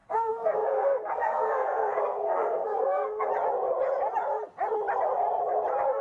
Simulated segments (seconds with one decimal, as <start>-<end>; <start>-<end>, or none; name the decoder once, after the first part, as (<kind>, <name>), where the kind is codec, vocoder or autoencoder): 0.0-3.3 (codec, SNAC)